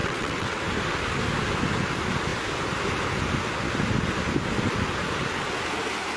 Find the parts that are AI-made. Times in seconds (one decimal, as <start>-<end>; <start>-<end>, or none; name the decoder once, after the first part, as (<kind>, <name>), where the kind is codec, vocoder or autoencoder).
0.0-0.6 (vocoder, WaveNeXt)